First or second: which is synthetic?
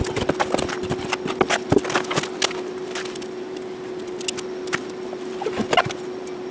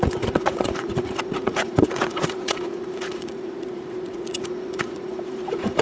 second